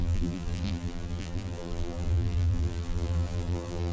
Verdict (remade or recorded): remade